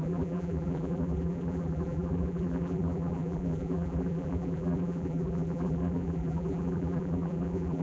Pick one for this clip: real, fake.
fake